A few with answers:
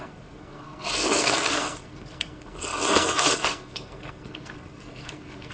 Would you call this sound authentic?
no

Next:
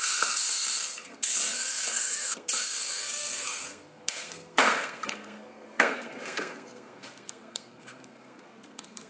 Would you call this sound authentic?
no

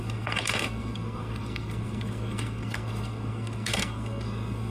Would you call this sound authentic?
no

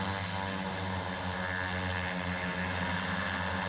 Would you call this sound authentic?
yes